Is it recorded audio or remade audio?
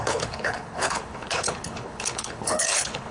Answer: remade